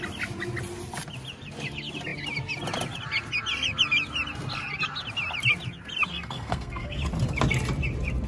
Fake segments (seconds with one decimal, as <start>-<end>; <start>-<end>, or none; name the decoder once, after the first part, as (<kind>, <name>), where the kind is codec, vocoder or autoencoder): 6.1-7.0 (codec, SNAC)